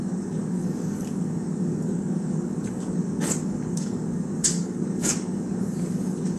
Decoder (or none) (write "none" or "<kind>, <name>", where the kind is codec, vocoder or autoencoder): codec, DAC